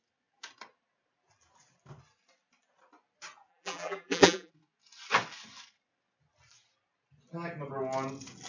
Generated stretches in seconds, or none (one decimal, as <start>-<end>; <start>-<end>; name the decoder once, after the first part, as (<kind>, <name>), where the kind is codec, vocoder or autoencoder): 3.5-4.5 (vocoder, BigVGAN v2)